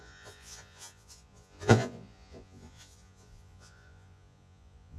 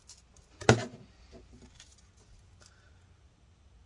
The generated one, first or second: first